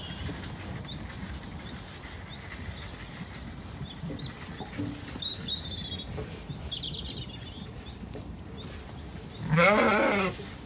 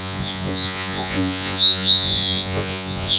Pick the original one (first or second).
first